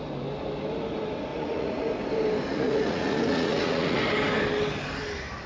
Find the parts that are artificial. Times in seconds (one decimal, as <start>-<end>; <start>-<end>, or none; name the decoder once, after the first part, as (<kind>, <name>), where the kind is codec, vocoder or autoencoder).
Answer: 1.3-1.9 (vocoder, Vocos); 2.5-4.0